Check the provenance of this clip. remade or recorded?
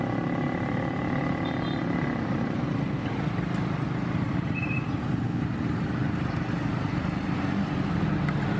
recorded